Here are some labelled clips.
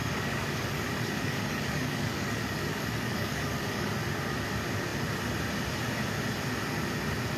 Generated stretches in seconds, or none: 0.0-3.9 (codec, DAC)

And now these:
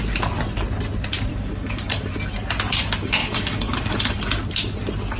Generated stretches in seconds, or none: 1.3-2.1 (codec, DAC); 3.2-4.2

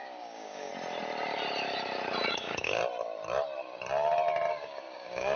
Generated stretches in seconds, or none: 0.0-0.7 (codec, DAC); 2.3-2.8; 4.5-5.4